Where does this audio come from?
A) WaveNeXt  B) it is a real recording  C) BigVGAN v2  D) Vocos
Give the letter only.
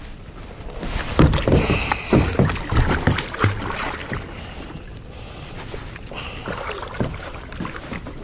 B